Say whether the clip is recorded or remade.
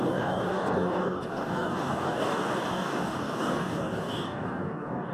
remade